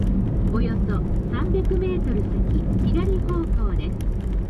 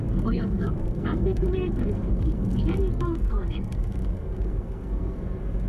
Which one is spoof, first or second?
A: second